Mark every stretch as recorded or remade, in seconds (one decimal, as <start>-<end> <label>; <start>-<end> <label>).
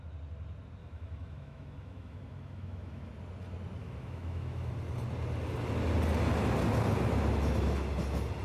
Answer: 0.0-0.8 recorded; 0.8-3.1 remade; 3.1-3.8 recorded; 3.8-4.7 remade; 4.7-8.4 recorded